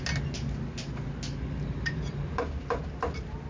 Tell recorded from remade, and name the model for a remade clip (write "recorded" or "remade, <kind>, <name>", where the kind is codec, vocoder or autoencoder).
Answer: recorded